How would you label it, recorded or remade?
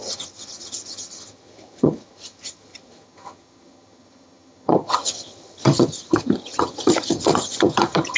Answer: remade